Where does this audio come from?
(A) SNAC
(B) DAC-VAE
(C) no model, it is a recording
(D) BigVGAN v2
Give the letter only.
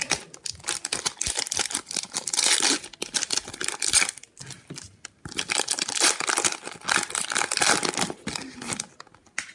C